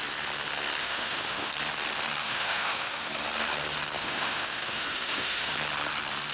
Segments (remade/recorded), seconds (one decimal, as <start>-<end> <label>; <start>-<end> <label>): 0.0-0.8 recorded; 0.8-1.5 remade; 1.5-2.2 recorded; 2.2-3.1 remade; 3.1-4.0 recorded; 4.0-5.5 remade; 5.5-6.3 recorded